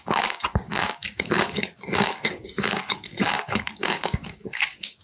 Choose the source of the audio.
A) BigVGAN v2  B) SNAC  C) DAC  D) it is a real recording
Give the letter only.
C